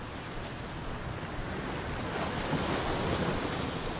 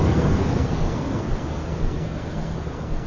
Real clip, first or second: first